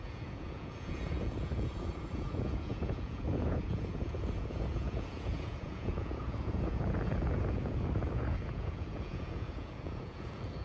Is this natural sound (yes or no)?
no